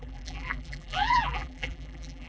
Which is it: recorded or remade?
remade